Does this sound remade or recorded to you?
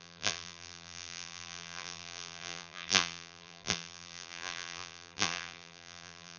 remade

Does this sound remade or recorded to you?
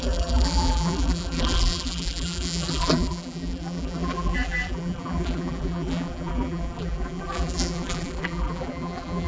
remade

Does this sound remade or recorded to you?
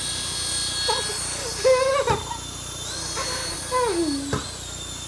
recorded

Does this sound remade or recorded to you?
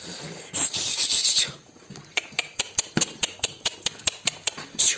remade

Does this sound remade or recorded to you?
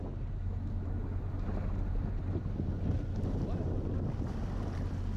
recorded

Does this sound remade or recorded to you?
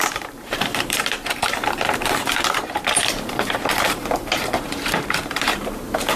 remade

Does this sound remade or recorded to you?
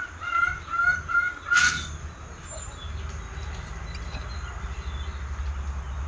recorded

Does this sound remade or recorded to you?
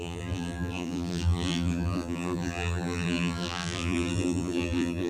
remade